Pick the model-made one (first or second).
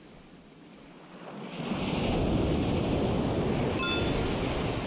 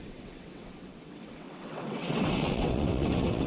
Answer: second